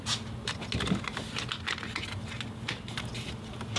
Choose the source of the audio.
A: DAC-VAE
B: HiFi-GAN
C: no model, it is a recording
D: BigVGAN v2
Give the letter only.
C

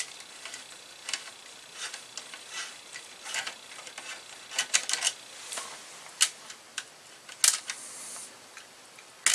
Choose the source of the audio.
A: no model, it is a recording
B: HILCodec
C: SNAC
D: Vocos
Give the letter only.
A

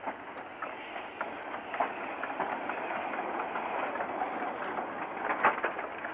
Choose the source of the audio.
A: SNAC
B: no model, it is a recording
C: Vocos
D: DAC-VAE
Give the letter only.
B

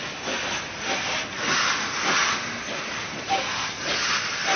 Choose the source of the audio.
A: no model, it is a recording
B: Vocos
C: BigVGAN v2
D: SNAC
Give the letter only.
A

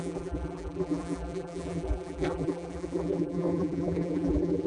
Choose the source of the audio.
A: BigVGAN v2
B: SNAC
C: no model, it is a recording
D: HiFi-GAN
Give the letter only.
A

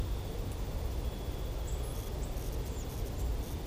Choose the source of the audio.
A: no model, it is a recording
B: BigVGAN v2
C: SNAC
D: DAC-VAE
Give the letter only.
A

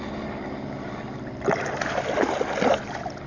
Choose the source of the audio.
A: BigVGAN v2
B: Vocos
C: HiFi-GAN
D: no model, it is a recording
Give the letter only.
D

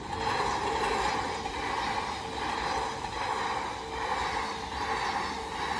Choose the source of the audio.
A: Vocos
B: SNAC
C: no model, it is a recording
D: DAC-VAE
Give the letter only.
C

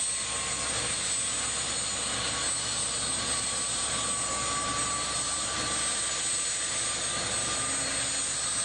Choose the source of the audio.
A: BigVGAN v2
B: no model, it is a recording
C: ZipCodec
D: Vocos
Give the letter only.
B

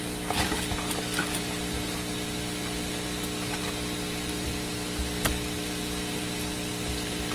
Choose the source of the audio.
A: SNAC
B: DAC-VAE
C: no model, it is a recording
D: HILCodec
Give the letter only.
C